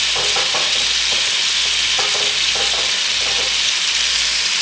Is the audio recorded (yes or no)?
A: yes